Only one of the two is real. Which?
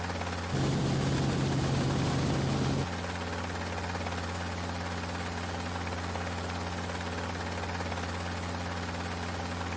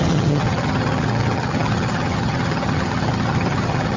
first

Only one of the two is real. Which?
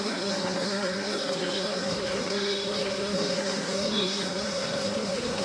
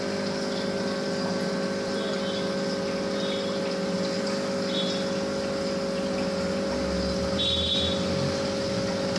second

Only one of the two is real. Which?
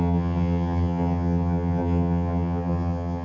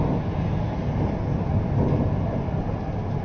second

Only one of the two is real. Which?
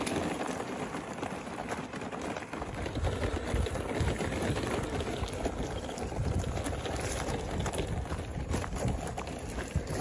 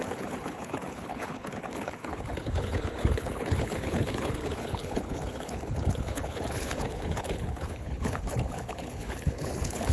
first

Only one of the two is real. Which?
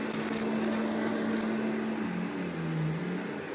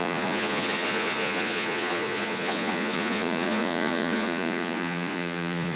first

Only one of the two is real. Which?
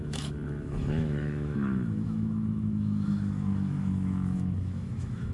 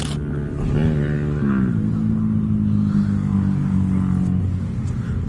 second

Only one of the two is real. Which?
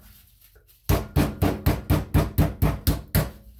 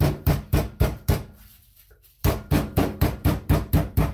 first